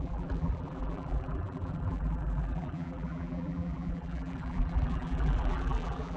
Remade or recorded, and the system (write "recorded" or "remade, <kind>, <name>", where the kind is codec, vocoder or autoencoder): remade, vocoder, BigVGAN v2